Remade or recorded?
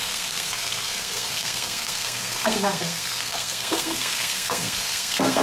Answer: remade